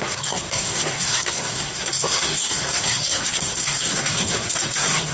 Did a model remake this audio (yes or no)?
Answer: yes